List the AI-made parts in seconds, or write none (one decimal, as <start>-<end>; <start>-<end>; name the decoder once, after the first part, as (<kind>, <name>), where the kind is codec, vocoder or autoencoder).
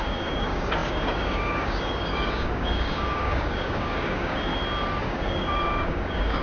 0.0-4.5 (codec, DAC); 5.0-6.4